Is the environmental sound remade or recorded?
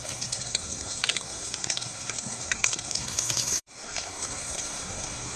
remade